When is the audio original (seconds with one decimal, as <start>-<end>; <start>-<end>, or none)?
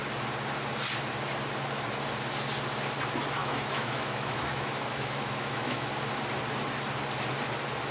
0.0-3.4; 5.9-7.9